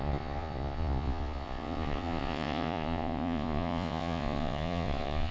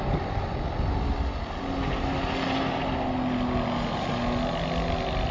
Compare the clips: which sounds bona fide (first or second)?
second